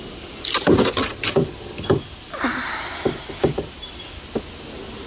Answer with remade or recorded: recorded